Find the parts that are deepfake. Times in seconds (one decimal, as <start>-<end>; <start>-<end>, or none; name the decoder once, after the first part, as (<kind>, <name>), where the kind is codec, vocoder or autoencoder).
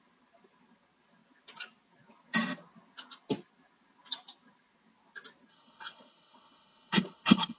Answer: 5.5-7.6 (codec, HILCodec)